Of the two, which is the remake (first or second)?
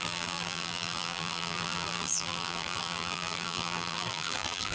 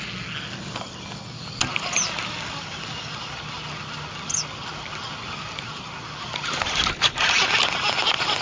first